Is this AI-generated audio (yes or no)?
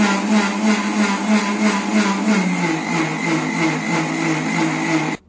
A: no